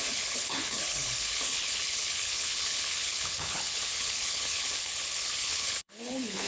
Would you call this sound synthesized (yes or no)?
yes